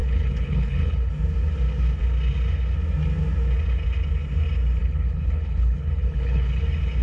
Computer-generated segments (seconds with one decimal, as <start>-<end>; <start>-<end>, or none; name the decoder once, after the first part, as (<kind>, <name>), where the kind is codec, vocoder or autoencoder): 0.0-1.1 (codec, HILCodec); 4.8-6.6

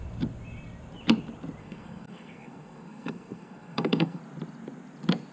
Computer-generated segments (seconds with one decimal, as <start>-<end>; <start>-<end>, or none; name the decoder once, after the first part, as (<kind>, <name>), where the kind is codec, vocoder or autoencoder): 1.6-4.2 (codec, SNAC)

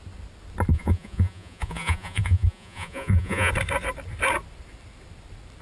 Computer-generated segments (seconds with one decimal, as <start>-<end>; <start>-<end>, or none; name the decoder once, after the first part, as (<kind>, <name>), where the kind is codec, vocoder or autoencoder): 0.7-3.5 (vocoder, Vocos)

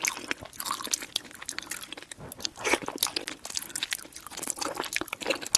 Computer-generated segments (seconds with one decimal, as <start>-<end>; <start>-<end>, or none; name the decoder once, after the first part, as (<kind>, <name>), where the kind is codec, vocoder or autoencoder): none

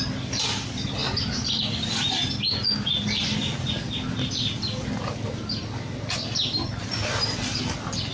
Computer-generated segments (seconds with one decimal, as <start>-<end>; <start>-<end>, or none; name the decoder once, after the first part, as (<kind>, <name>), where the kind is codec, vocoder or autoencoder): none